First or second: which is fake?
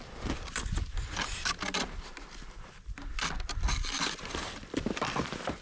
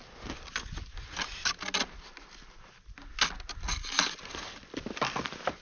first